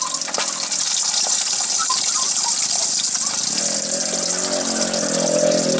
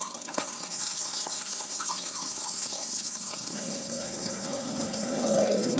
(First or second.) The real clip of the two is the first